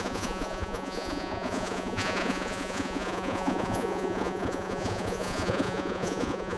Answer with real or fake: fake